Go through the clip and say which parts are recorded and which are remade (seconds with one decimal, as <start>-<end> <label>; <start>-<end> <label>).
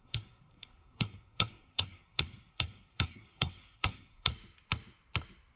0.0-4.3 remade; 4.3-5.6 recorded